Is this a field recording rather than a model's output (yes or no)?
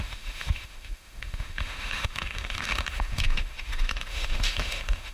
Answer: no